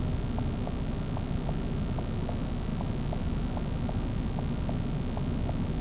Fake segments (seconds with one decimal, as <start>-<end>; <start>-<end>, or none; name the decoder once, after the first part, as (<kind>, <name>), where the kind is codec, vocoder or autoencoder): none